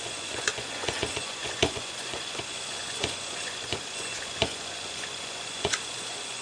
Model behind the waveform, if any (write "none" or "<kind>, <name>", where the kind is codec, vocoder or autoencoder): vocoder, Vocos